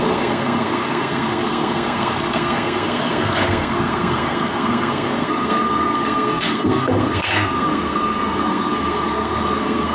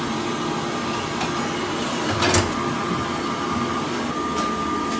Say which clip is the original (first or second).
second